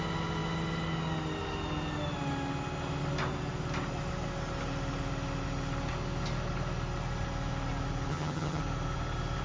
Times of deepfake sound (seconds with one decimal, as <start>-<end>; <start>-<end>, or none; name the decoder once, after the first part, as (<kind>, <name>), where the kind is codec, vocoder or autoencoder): 8.1-8.6 (vocoder, HiFi-GAN)